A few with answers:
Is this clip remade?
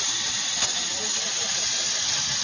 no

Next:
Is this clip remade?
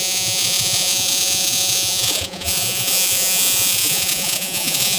yes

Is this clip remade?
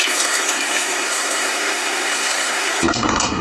yes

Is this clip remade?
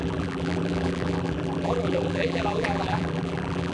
yes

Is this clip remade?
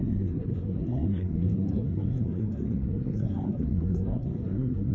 yes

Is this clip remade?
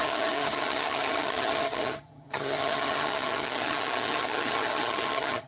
yes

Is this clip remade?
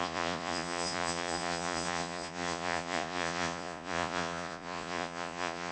yes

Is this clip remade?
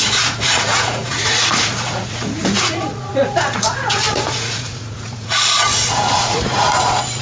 yes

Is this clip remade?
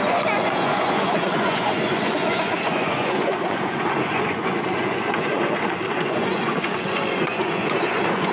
yes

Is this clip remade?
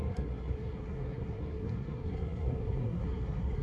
yes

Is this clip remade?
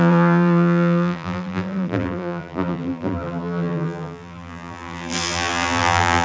yes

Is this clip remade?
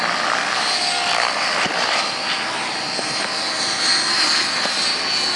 no